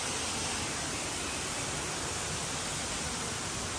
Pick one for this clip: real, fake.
real